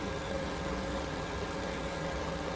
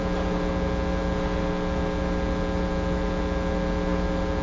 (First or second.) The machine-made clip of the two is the first